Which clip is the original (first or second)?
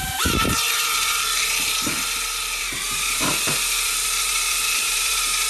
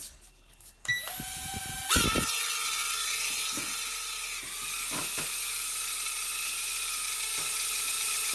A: second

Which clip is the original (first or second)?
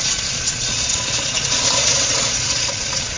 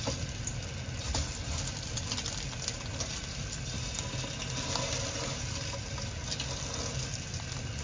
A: second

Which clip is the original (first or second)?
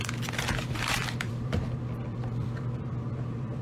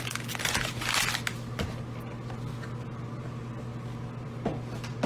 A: second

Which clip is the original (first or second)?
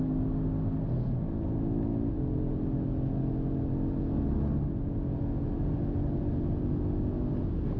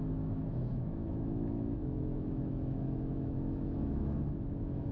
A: first